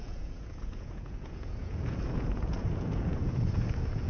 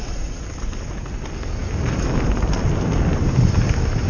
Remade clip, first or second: first